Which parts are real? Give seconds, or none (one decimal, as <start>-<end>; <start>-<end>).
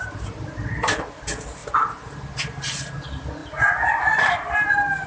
0.0-5.1